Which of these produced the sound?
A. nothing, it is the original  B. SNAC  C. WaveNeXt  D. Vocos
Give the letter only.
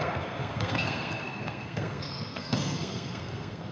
B